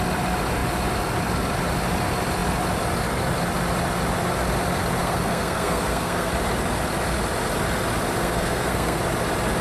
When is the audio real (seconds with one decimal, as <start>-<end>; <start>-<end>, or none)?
0.0-5.0; 6.3-8.2; 9.0-9.6